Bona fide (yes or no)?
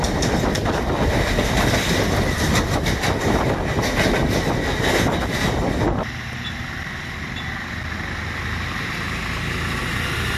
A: yes